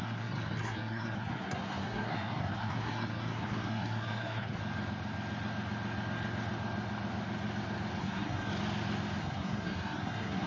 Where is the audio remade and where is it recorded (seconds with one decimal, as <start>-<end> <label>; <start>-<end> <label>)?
0.0-4.6 remade; 4.6-8.0 recorded; 8.0-8.5 remade; 8.5-9.2 recorded; 9.2-10.5 remade